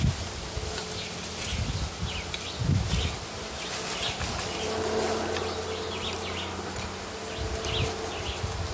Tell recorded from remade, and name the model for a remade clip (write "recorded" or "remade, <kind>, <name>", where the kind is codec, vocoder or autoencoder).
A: recorded